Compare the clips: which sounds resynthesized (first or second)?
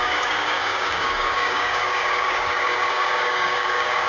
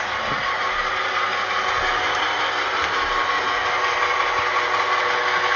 first